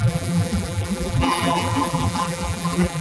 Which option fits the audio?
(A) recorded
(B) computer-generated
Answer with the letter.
B